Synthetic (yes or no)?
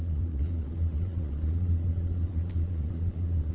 yes